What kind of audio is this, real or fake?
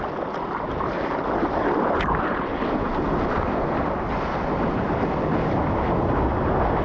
real